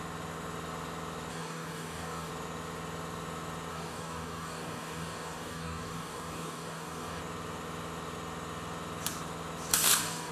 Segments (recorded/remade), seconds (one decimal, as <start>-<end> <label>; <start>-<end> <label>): 0.0-1.3 recorded; 1.3-2.3 remade; 2.3-3.7 recorded; 3.7-7.2 remade; 7.2-9.7 recorded; 9.7-10.3 remade